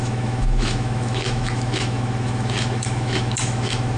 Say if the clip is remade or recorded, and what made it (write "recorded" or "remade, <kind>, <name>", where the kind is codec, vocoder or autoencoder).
remade, autoencoder, DAC-VAE